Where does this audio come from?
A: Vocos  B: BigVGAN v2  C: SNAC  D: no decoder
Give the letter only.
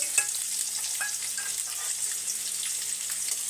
D